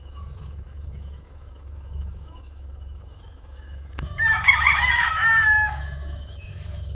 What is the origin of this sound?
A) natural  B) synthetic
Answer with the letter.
B